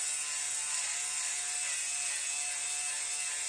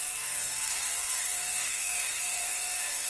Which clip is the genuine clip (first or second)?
first